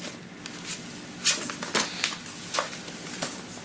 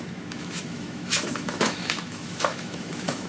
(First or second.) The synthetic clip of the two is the second